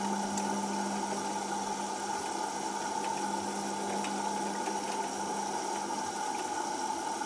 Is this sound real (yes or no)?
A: yes